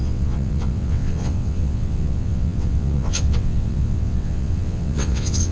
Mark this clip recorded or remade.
remade